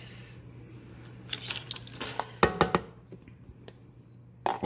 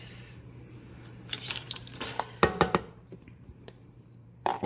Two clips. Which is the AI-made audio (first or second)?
second